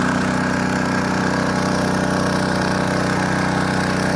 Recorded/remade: recorded